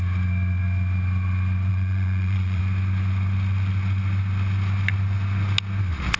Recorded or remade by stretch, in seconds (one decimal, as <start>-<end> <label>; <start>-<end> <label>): 0.0-1.7 recorded; 1.7-2.6 remade; 2.6-6.2 recorded

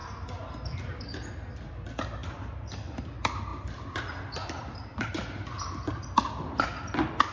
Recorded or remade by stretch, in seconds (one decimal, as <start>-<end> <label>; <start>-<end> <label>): 0.0-7.3 recorded

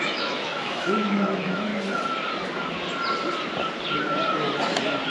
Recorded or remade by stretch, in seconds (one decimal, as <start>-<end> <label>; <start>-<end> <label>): 0.0-1.7 remade; 1.7-5.1 recorded

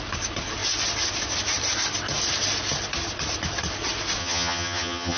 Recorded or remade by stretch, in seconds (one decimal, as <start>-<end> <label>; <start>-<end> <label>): 0.0-4.2 recorded; 4.2-5.2 remade

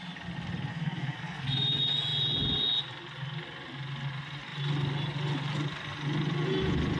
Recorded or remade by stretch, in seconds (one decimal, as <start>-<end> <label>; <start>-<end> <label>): 0.0-0.7 recorded; 0.7-1.4 remade; 1.4-7.0 recorded

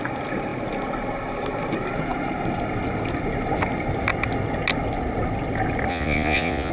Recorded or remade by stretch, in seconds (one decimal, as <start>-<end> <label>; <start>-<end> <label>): 0.0-5.9 recorded; 5.9-6.7 remade